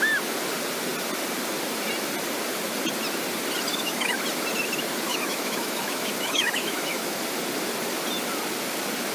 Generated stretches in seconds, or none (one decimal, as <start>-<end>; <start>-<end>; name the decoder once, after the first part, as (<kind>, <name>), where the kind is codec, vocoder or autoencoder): 3.7-4.2 (autoencoder, DAC-VAE); 5.1-7.2